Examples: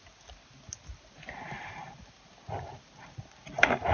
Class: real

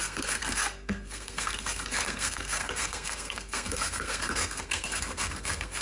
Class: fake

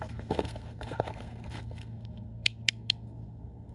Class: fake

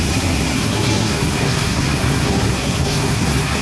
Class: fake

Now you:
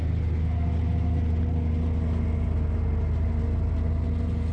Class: real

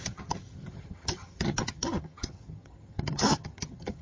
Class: fake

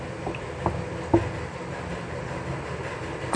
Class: real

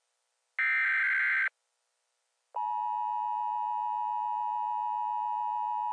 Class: real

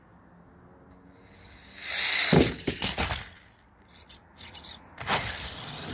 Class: real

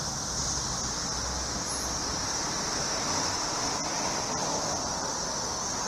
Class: real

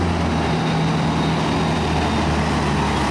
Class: real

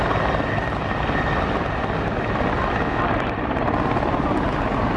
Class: real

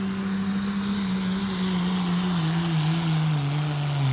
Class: real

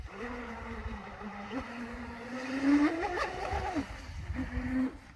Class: fake